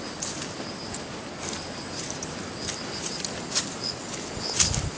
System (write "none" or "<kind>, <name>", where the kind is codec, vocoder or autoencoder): none